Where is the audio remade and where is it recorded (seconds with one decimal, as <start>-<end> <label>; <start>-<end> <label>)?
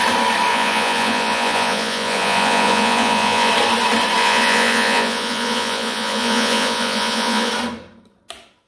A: 0.0-0.5 recorded; 0.5-3.5 remade; 3.5-4.2 recorded; 4.2-7.5 remade; 7.5-8.7 recorded